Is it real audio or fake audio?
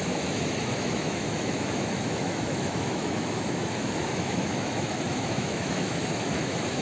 fake